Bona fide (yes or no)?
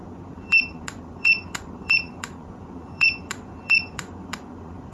no